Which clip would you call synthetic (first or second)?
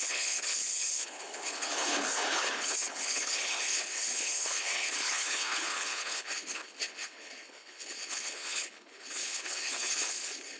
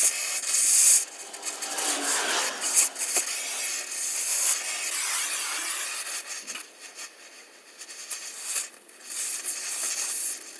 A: first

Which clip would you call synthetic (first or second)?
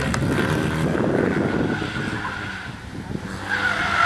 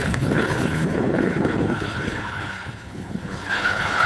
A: second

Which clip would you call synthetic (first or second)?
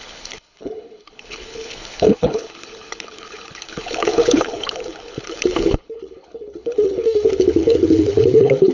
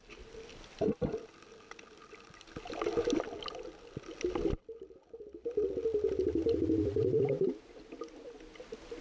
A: first